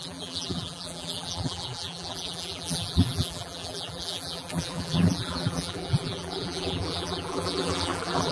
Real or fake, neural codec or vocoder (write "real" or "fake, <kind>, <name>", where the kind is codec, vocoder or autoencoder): fake, vocoder, BigVGAN v2